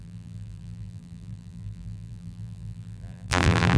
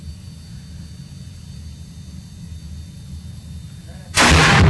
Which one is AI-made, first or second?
first